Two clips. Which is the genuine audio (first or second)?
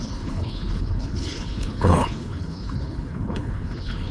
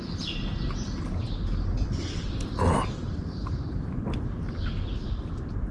second